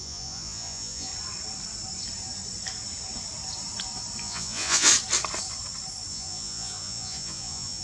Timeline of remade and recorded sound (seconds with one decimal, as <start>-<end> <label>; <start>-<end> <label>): 0.0-1.1 remade; 1.1-4.2 recorded; 4.2-4.9 remade; 4.9-6.1 recorded; 6.1-7.8 remade